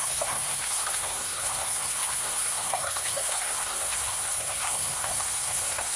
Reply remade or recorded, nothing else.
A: remade